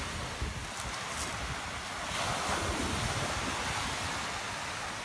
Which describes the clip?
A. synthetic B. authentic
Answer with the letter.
B